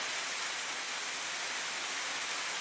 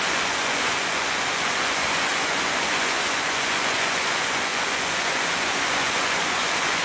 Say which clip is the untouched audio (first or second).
first